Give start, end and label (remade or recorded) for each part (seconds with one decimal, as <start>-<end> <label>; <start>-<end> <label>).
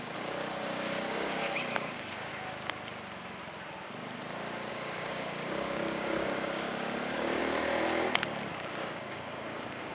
0.0-2.3 remade; 2.3-4.7 recorded; 4.7-7.4 remade; 7.4-8.5 recorded; 8.5-9.9 remade